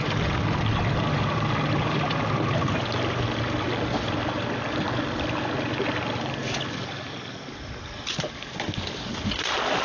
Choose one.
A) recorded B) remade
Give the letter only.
A